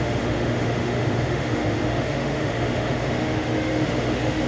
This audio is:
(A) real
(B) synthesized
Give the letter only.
B